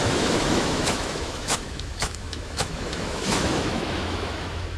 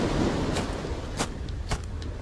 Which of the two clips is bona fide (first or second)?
second